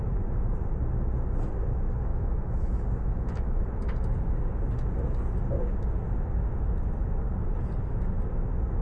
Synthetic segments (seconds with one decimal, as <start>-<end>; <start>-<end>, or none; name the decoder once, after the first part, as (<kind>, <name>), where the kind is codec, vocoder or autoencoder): 2.1-3.6 (autoencoder, DAC-VAE)